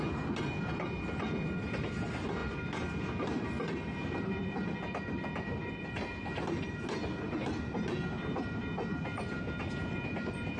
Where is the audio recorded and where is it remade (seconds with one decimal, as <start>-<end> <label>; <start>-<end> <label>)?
0.0-10.6 recorded